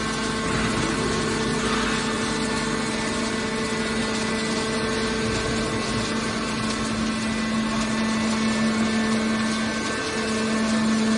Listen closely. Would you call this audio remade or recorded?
recorded